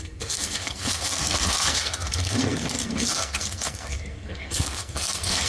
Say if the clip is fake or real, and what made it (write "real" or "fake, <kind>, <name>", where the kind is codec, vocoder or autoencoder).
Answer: fake, codec, SNAC